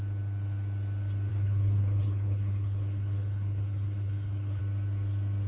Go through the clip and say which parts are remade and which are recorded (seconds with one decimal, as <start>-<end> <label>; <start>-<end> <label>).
0.0-1.3 recorded; 1.3-4.6 remade; 4.6-5.5 recorded